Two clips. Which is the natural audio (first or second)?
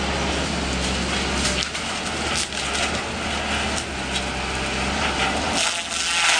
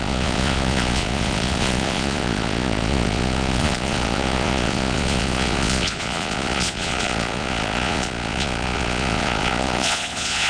first